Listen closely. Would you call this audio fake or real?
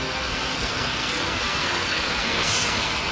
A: fake